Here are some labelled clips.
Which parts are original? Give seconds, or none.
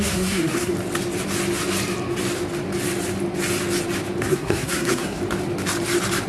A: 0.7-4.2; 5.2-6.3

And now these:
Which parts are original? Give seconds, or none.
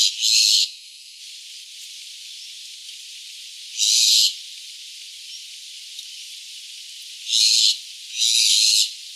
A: 0.0-0.6; 1.2-9.2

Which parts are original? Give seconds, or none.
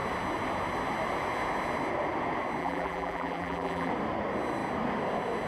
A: 0.0-2.6; 3.9-5.5